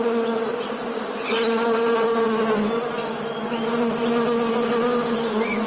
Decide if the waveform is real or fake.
real